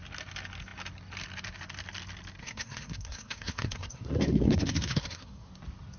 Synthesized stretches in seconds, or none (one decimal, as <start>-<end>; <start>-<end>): 2.4-5.5